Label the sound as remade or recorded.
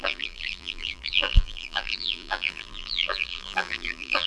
remade